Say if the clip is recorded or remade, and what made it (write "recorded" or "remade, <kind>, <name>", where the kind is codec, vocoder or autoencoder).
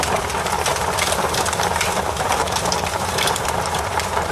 remade, vocoder, BigVGAN v2